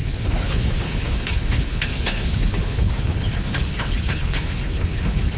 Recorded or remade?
remade